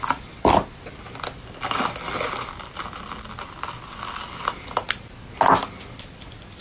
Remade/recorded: recorded